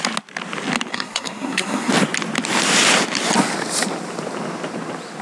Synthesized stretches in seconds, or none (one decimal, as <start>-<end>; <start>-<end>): 0.9-1.9